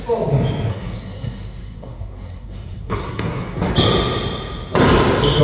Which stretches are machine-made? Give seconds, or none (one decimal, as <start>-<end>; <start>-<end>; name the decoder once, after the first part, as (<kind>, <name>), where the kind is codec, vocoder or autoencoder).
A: 0.7-3.7 (codec, SNAC)